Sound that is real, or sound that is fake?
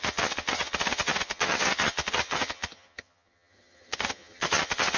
fake